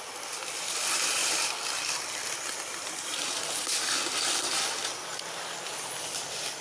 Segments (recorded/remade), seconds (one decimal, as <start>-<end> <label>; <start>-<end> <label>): 0.0-6.6 recorded